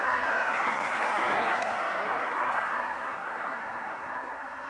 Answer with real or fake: fake